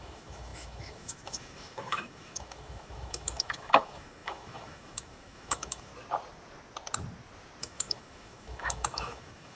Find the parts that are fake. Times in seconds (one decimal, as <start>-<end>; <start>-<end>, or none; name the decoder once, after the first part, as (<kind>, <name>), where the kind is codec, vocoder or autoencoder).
0.0-5.9 (autoencoder, DAC-VAE); 7.6-9.6